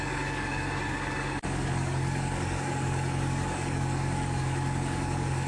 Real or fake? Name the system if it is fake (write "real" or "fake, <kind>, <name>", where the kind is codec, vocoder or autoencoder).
fake, codec, DAC